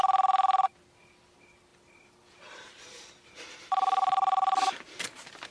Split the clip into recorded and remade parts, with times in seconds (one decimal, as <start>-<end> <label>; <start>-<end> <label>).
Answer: 0.0-1.7 recorded; 1.7-5.0 remade; 5.0-5.5 recorded